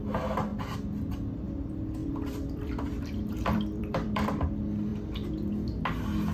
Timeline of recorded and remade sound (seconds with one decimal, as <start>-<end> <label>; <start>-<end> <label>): 0.0-2.0 recorded; 2.0-4.3 remade; 4.3-6.3 recorded